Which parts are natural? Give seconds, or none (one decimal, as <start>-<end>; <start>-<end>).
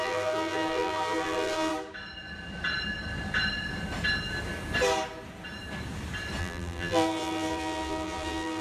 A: 1.7-6.4